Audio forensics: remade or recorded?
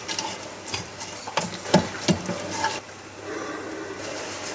recorded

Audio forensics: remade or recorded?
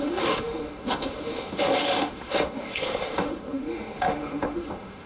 remade